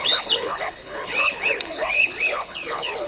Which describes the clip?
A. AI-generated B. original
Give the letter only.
A